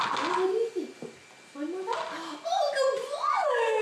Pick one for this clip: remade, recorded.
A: recorded